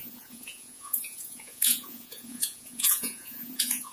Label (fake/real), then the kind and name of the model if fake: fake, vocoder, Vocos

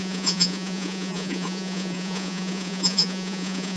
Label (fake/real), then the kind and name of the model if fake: fake, vocoder, Vocos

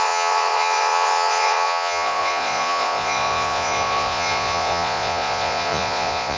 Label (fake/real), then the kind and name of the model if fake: fake, vocoder, Vocos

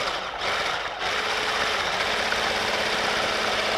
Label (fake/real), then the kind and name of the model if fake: real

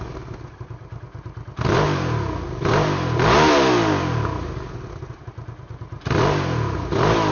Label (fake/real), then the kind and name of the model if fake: real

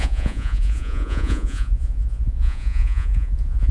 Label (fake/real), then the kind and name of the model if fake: fake, vocoder, Vocos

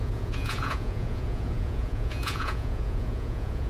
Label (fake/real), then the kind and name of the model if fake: fake, vocoder, Vocos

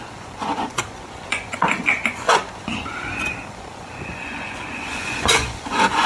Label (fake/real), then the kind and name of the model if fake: fake, vocoder, Vocos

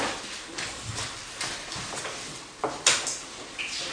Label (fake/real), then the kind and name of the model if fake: real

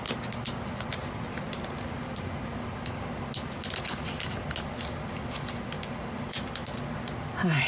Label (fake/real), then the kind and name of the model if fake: real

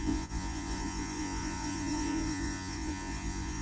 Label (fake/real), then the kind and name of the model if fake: fake, vocoder, Vocos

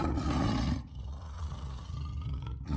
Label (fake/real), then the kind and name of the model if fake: fake, vocoder, Vocos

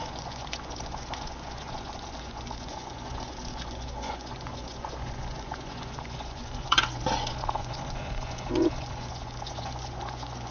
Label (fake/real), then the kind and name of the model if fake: fake, vocoder, Vocos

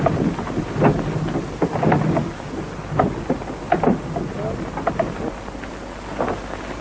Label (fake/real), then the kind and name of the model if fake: real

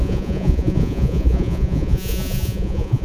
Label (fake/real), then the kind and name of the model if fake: fake, vocoder, Vocos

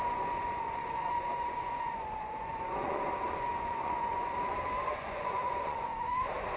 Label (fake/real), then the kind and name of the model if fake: fake, vocoder, Vocos